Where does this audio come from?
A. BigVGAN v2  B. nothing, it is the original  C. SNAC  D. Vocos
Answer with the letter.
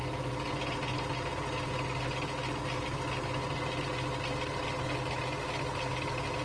B